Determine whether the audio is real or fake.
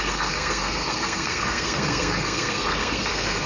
fake